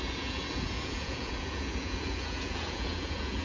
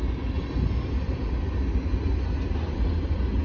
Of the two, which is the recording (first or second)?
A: second